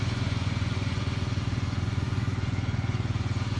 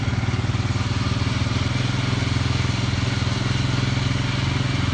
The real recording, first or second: second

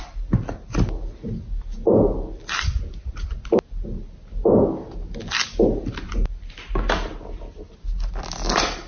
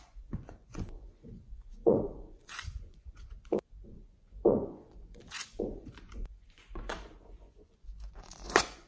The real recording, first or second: first